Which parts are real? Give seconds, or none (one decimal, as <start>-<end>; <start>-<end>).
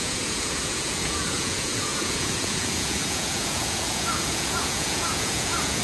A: none